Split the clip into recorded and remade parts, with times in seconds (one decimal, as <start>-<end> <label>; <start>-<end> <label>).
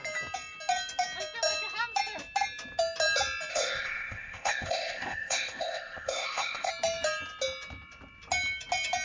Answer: 0.0-3.5 recorded; 3.5-6.7 remade; 6.7-9.0 recorded